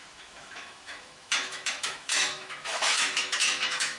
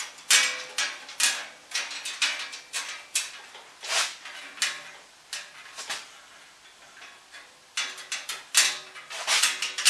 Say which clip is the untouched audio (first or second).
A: second